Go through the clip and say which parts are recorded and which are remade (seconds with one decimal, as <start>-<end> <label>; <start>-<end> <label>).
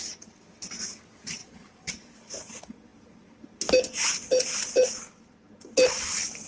0.0-1.4 recorded; 1.4-1.9 remade; 1.9-6.5 recorded